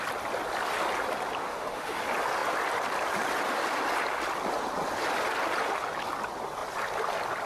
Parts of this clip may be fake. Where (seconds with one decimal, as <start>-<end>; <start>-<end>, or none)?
1.4-2.0